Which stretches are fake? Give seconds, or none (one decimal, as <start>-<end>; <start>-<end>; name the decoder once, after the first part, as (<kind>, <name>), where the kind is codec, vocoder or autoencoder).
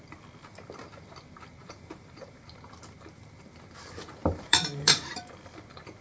1.6-2.4 (vocoder, BigVGAN v2); 4.2-5.2